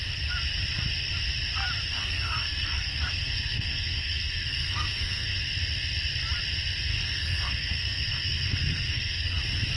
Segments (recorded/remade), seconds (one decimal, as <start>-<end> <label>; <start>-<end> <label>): 0.0-1.9 recorded; 1.9-5.4 remade; 5.4-6.9 recorded; 6.9-9.4 remade; 9.4-9.8 recorded